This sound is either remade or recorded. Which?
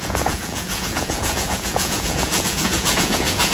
remade